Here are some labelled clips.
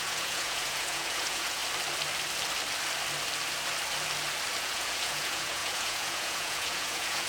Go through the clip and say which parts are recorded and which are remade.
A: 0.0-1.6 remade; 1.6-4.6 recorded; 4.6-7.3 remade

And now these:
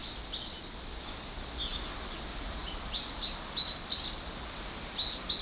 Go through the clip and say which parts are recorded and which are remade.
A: 0.0-5.4 recorded

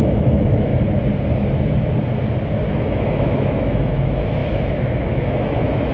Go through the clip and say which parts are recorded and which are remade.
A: 0.0-0.7 remade; 0.7-2.7 recorded; 2.7-5.9 remade